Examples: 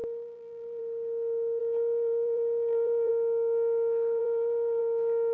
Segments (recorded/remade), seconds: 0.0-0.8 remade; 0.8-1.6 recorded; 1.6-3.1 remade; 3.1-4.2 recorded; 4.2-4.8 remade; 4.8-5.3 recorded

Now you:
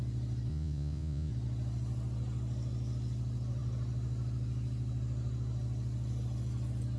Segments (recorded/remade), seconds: 0.0-0.5 recorded; 0.5-1.3 remade; 1.3-7.0 recorded

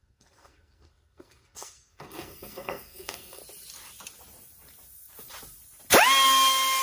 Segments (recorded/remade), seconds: 0.0-3.4 remade; 3.4-6.8 recorded

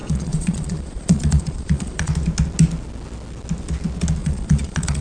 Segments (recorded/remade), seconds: 0.0-2.1 remade; 2.1-4.2 recorded; 4.2-5.0 remade